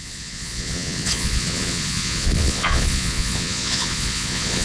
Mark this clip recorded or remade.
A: remade